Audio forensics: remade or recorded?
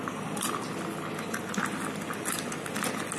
recorded